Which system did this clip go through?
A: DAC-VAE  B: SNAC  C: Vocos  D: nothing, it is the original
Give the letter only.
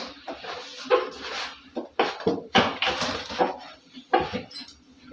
D